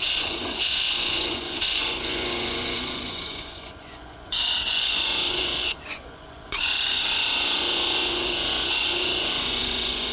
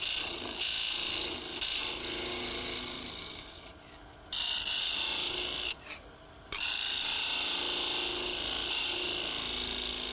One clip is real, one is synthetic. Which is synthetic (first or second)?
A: first